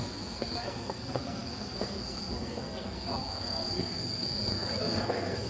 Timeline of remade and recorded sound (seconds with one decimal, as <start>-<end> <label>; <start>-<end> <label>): 0.0-5.5 remade